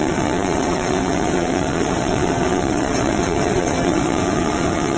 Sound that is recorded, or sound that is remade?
remade